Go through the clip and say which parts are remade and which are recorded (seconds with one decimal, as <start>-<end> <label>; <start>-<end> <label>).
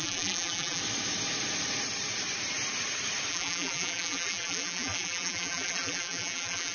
0.0-0.8 remade; 0.8-3.3 recorded; 3.3-6.7 remade